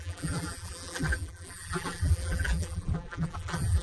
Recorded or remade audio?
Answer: remade